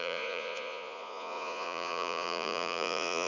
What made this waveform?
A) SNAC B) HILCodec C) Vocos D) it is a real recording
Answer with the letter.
C